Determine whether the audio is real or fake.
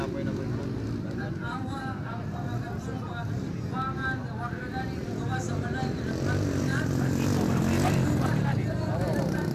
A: real